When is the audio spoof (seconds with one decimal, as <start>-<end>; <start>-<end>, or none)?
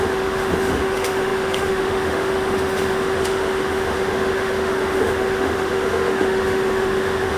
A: 0.0-7.4